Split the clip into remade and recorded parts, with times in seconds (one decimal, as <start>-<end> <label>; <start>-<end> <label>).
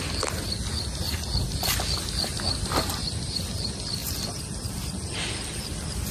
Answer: 0.0-6.1 recorded